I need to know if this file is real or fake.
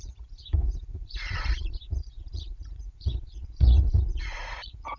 fake